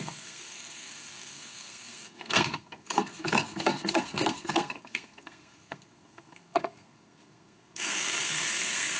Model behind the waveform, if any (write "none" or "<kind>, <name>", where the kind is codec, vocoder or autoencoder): codec, SNAC